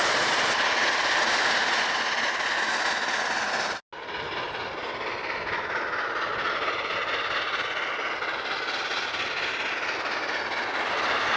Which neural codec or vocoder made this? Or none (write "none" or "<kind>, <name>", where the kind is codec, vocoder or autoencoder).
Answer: none